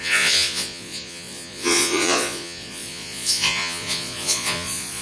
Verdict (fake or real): fake